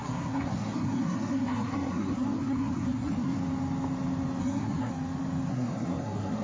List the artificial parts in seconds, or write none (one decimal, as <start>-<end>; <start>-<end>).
0.0-3.4; 4.4-4.9; 5.5-6.4